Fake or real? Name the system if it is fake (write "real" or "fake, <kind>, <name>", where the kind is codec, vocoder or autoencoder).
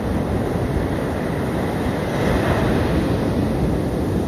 real